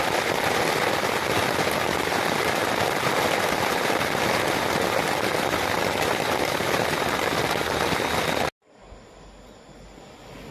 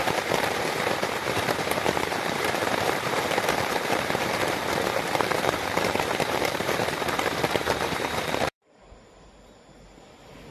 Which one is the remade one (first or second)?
second